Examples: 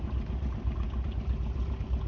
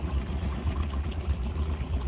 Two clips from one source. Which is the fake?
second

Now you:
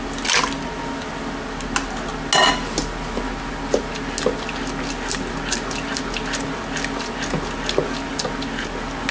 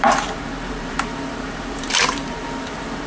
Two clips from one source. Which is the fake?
second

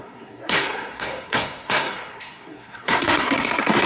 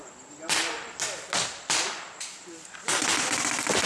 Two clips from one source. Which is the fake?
first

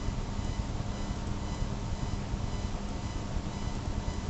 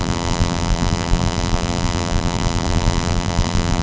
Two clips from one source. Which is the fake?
second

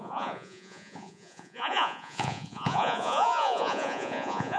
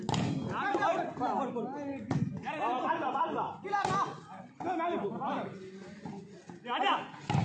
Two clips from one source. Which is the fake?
first